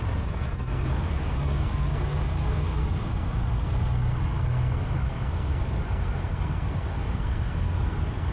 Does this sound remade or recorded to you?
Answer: remade